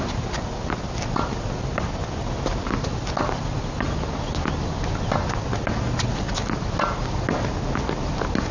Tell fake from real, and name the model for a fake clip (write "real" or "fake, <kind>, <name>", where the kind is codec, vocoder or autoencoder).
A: real